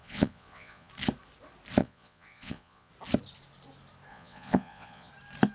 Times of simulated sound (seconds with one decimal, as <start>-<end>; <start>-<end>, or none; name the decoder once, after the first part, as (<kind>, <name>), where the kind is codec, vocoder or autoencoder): 0.0-0.9 (vocoder, Vocos); 1.8-2.9; 4.1-5.1